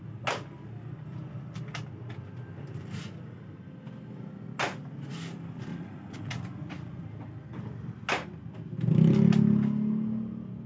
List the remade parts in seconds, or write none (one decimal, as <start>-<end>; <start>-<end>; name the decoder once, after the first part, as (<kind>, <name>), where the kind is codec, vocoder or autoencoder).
5.7-7.0 (vocoder, Vocos)

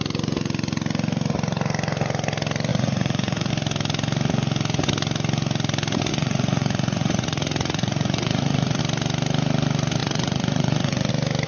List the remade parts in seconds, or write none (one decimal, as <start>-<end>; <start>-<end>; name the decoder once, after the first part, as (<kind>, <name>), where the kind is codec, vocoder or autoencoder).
2.7-3.5 (vocoder, Vocos); 6.1-8.8; 10.0-11.1

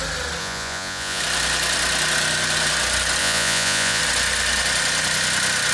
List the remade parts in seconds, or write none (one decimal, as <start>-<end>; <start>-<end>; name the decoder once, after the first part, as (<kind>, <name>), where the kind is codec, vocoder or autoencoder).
0.4-1.2 (vocoder, Vocos); 3.2-4.0

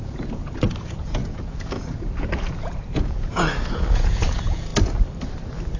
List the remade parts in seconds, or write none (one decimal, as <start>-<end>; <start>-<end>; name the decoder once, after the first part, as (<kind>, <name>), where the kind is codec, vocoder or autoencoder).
0.0-4.7 (vocoder, Vocos)

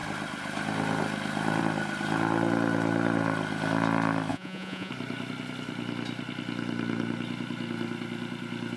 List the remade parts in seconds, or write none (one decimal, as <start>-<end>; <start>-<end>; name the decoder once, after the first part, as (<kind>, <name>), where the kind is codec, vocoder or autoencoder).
4.3-4.9 (vocoder, Vocos)

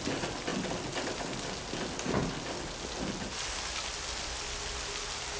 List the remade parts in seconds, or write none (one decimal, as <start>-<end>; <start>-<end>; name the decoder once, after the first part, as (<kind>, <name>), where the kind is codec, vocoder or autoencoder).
none

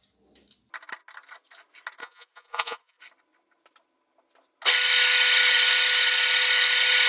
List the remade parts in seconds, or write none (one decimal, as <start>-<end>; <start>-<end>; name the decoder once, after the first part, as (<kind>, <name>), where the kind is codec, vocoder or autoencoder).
2.0-3.0 (vocoder, Vocos)